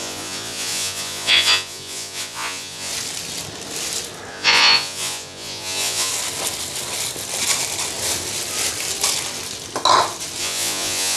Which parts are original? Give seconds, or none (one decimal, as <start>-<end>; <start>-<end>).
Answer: 2.9-4.3; 6.1-10.4